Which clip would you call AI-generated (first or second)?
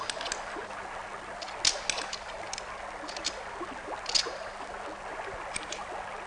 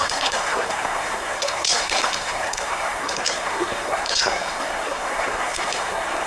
second